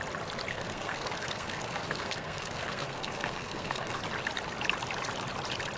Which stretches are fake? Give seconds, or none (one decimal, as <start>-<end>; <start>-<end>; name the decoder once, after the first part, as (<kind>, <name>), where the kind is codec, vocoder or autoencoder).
0.5-4.0 (codec, SNAC)